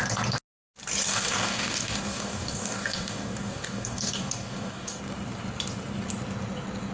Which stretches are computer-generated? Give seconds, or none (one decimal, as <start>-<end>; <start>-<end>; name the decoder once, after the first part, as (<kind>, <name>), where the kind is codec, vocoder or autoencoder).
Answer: 1.1-5.0 (codec, DAC)

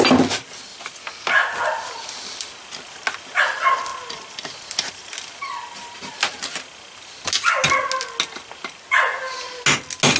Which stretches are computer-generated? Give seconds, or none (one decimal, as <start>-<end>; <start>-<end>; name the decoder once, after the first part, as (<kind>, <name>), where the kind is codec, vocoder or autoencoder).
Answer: none